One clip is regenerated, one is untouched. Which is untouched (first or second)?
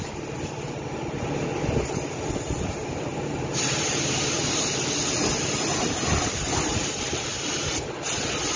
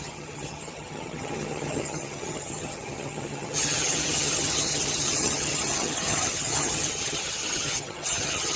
first